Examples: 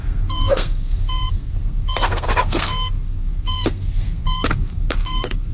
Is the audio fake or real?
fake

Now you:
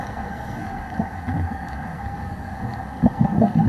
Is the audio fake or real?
fake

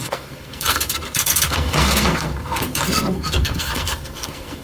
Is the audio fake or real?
fake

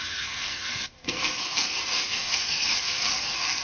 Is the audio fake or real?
fake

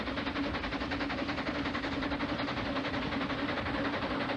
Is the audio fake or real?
real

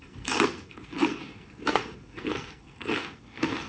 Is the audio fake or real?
fake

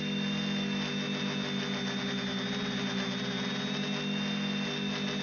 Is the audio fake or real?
real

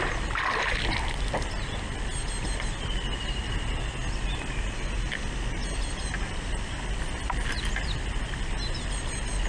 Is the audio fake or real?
real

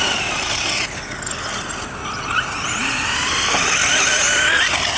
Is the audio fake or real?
real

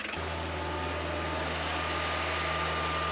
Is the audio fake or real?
real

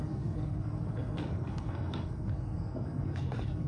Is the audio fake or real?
fake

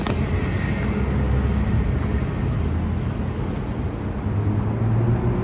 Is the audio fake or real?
real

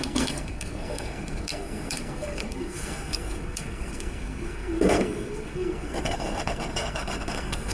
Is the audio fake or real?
fake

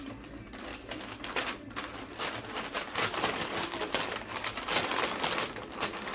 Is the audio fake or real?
real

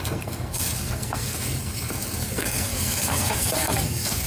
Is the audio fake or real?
fake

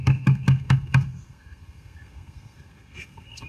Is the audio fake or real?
fake